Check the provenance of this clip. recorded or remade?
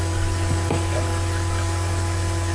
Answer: recorded